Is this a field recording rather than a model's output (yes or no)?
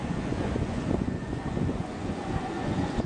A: no